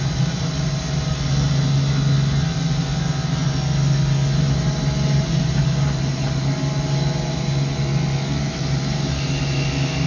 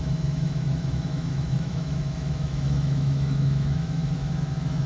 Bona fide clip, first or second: first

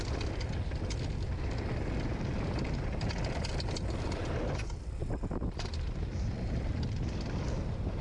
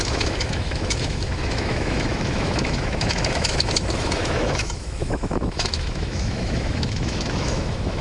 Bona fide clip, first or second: first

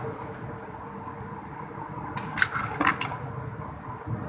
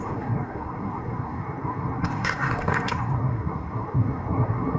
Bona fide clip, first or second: first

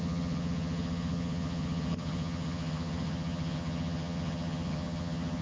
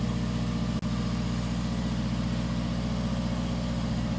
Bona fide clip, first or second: second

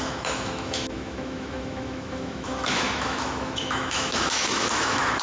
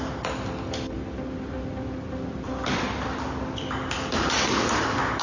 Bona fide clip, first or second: second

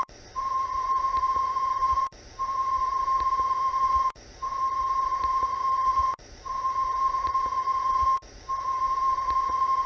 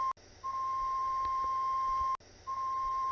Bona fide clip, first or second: second